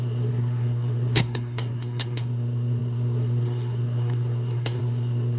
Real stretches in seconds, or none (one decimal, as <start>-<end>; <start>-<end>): none